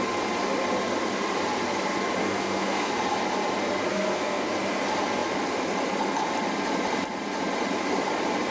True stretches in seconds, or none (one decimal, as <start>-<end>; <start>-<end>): 0.0-2.2; 2.9-3.9; 4.5-8.5